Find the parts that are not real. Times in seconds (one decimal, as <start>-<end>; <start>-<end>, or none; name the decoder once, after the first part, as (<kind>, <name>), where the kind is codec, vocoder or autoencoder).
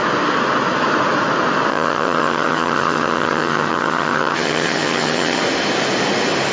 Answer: 1.7-5.4 (vocoder, HiFi-GAN)